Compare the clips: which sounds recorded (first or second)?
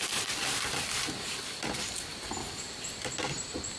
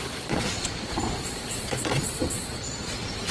first